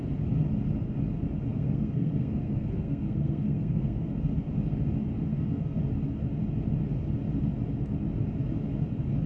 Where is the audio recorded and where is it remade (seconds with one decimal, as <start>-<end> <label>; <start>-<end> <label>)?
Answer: 0.0-1.5 recorded; 1.5-4.1 remade; 4.1-5.3 recorded; 5.3-5.8 remade; 5.8-9.3 recorded